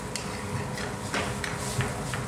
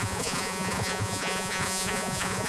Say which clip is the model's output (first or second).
second